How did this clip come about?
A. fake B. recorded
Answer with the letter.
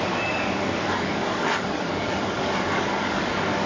A